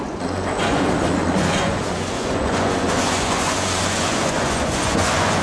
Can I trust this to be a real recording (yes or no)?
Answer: no